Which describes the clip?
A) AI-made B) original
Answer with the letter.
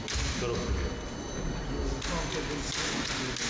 B